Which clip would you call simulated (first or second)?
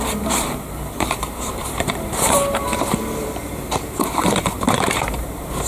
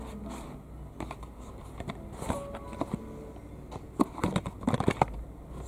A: first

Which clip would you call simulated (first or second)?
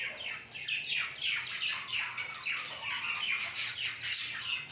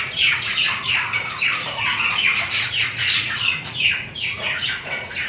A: second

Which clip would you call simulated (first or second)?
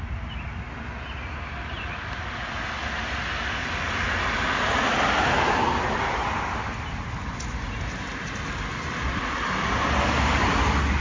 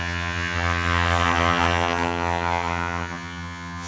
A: second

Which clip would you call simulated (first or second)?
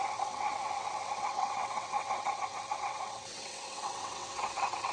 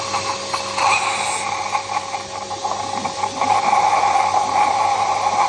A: first